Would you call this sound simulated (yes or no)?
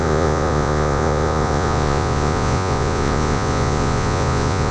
yes